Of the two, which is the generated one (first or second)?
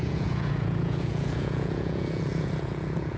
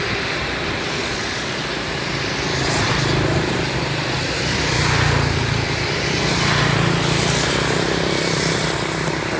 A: first